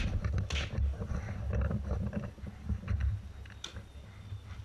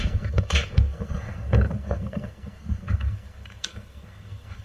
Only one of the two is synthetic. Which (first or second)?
second